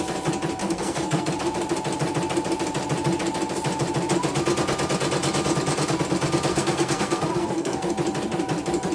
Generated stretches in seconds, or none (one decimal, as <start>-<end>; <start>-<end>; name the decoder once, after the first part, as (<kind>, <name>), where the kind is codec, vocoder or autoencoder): 0.6-1.3 (codec, SNAC); 6.5-7.9